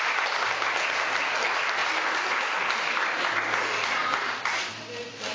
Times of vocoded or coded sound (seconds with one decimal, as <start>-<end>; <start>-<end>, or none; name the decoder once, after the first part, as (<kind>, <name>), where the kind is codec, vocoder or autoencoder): none